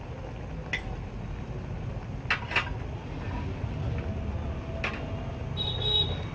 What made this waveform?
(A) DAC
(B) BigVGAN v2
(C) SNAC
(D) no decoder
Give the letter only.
D